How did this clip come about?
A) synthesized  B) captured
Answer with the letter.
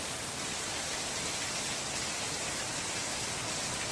B